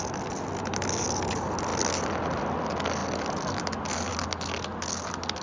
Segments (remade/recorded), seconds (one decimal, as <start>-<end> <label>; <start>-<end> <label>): 0.0-5.4 recorded

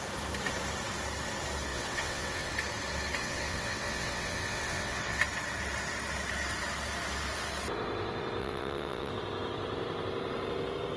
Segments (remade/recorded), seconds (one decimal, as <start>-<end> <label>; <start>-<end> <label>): 0.0-1.7 recorded; 1.7-2.5 remade; 2.5-3.2 recorded; 3.2-5.2 remade; 5.2-8.4 recorded; 8.4-9.1 remade; 9.1-11.0 recorded

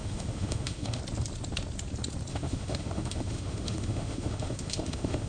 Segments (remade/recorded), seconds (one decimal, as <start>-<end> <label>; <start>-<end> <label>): 0.0-1.0 remade; 1.0-2.3 recorded; 2.3-5.3 remade

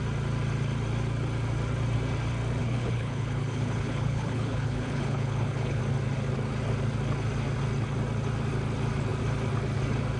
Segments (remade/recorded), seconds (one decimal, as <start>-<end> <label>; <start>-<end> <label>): 0.0-2.6 recorded; 2.6-5.8 remade; 5.8-10.2 recorded

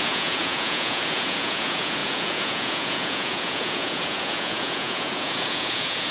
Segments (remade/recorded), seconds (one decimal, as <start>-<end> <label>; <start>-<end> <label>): 0.0-6.1 remade

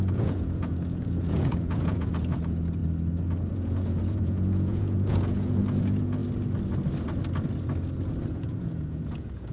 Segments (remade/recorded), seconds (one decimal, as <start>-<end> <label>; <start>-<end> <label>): 0.0-2.8 remade; 2.8-3.5 recorded; 3.5-6.2 remade; 6.2-8.3 recorded; 8.3-9.5 remade

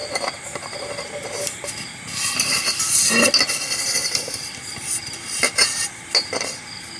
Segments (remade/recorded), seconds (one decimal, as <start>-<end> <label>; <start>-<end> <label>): 0.0-7.0 recorded

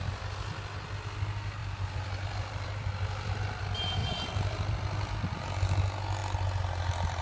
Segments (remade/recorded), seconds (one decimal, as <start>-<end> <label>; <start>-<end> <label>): 0.0-1.6 recorded; 1.6-3.6 remade; 3.6-4.0 recorded; 4.0-5.4 remade; 5.4-7.2 recorded